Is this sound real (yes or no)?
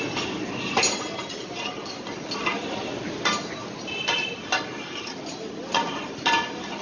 yes